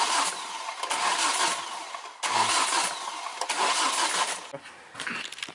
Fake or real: real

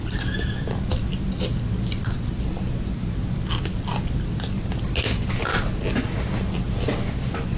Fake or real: real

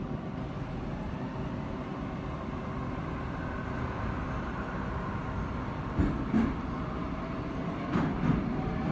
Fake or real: real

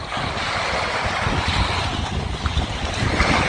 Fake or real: real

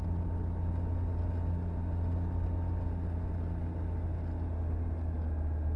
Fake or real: real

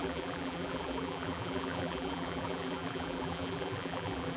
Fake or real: fake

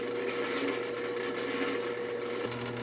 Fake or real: real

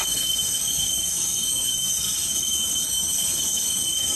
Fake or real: fake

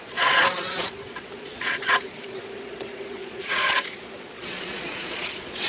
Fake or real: fake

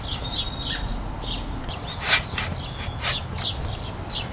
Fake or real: real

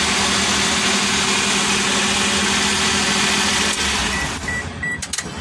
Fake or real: real